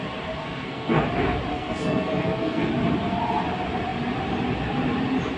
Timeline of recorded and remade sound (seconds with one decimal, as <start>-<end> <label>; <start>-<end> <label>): 0.0-0.4 recorded; 0.4-1.1 remade; 1.1-1.5 recorded; 1.5-2.7 remade; 2.7-5.4 recorded